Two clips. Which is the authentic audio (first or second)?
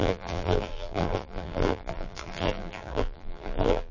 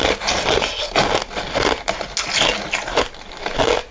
second